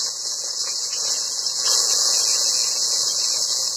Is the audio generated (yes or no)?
yes